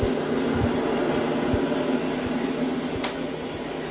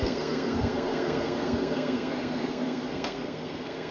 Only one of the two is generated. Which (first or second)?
second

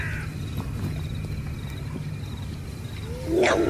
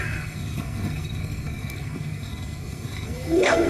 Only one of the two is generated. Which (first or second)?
second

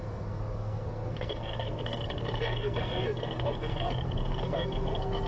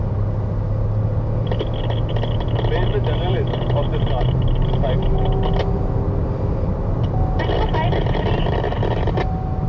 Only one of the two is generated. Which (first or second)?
first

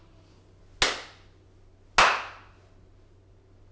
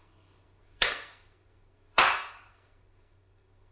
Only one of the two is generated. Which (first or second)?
second